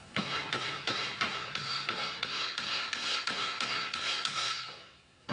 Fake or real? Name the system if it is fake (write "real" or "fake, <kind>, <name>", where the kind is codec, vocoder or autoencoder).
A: fake, codec, SNAC